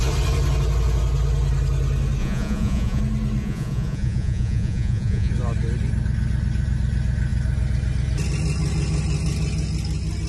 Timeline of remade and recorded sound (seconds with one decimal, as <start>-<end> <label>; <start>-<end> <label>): 0.0-2.2 recorded; 2.2-3.0 remade; 3.0-3.4 recorded; 3.4-5.3 remade; 5.3-10.3 recorded